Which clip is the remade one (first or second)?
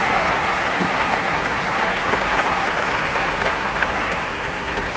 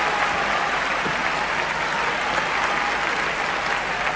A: first